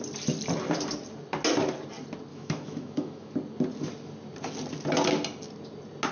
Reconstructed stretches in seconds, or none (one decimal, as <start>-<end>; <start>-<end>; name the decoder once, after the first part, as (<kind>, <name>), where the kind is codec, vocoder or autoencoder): 2.3-3.3 (autoencoder, DAC-VAE)